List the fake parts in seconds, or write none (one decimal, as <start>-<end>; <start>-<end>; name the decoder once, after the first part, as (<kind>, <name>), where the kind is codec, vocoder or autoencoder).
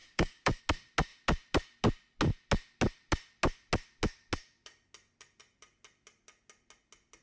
0.0-0.6 (codec, DAC)